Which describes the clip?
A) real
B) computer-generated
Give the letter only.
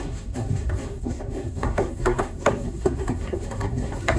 B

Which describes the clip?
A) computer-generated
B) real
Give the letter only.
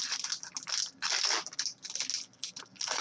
B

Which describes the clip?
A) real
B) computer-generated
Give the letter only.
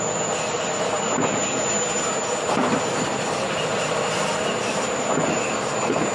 A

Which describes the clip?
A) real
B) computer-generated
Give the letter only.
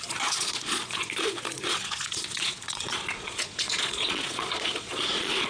B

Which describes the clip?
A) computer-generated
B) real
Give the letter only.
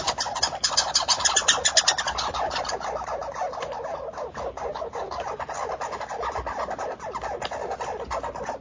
B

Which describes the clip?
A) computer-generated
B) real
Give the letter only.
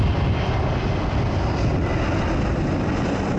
B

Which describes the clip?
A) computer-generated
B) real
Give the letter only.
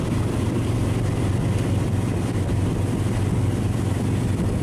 B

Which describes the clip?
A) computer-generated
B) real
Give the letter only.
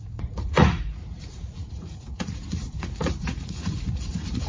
A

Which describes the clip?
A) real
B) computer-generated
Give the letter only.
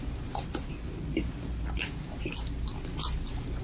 A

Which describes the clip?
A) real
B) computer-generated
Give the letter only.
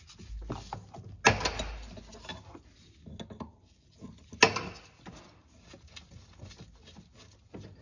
A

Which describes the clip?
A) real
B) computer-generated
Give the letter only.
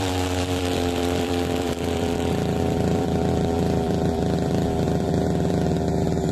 B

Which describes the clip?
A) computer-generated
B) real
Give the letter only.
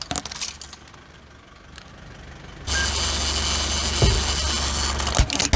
B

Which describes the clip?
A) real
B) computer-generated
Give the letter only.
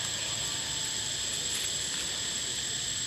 A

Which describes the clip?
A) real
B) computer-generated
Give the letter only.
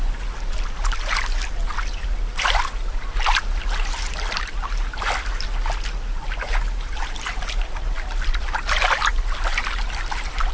A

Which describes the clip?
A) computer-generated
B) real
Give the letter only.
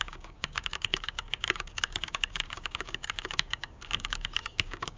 A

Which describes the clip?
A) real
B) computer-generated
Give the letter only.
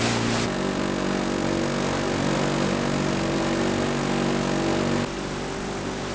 A